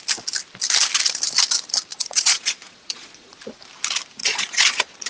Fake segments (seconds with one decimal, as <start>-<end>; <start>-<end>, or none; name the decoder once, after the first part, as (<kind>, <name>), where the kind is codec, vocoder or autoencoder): 1.9-3.4 (vocoder, Vocos); 4.2-5.1